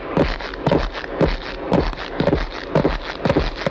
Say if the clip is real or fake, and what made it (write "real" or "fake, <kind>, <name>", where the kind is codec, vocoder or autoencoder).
real